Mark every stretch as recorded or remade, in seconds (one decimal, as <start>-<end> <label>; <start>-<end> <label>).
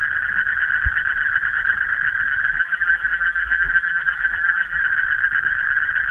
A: 0.0-2.5 recorded; 2.5-4.8 remade; 4.8-6.1 recorded